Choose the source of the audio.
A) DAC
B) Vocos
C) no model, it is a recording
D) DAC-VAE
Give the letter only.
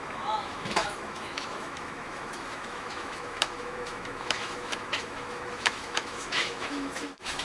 D